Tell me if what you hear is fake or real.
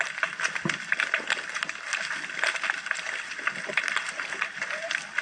fake